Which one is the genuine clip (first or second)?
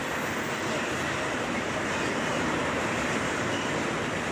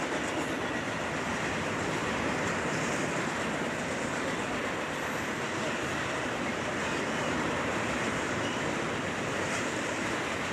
first